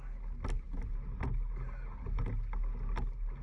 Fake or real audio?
real